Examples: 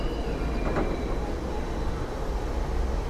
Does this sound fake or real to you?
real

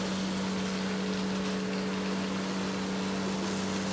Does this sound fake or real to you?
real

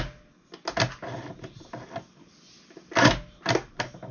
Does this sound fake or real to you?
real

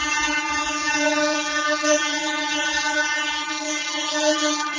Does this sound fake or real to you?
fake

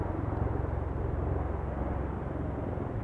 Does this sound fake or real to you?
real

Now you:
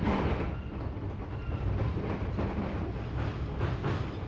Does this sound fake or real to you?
real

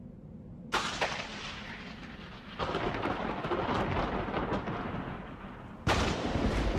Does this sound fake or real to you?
real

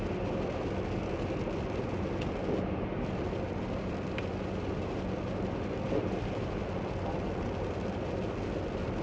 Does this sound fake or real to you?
real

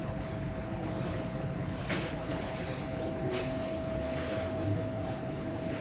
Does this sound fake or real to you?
fake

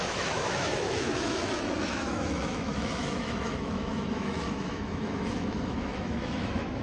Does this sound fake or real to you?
fake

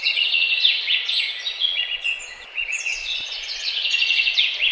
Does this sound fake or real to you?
fake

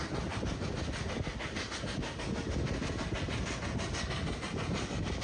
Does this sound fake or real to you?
real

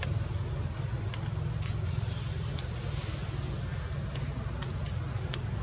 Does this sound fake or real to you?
real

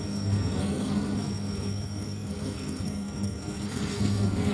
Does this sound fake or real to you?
fake